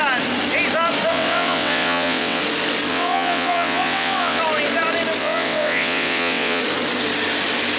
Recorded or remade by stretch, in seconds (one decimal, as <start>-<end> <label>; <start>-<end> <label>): 0.0-1.1 recorded; 1.1-2.4 remade; 2.4-2.9 recorded; 2.9-4.4 remade; 4.4-5.2 recorded; 5.2-6.6 remade; 6.6-7.8 recorded